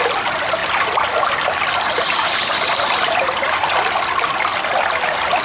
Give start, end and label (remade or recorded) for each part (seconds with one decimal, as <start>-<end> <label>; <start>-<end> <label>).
0.0-5.4 recorded